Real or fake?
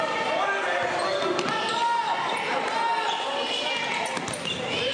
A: real